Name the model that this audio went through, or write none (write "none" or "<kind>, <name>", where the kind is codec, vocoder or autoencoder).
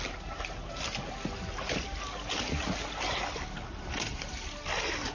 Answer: none